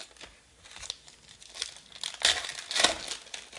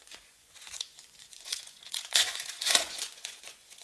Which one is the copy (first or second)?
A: second